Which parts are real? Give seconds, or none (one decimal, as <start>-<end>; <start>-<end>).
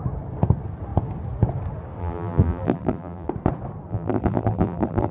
0.0-2.0; 3.3-3.9